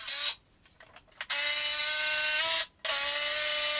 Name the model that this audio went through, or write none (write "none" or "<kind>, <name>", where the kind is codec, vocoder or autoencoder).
none